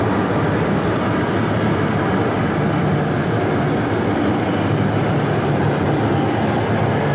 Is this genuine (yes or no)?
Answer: yes